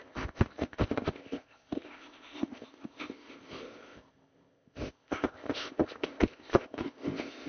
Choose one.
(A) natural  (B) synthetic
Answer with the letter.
B